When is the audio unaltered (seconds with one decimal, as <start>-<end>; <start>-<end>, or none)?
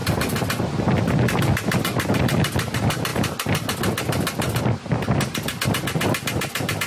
0.0-6.9